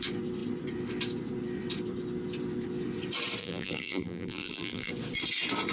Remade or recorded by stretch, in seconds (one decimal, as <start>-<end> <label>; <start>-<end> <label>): 0.0-3.4 recorded; 3.4-4.9 remade; 4.9-5.7 recorded